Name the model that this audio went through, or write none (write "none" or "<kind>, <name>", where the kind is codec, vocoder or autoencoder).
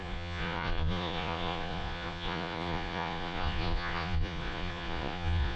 vocoder, Vocos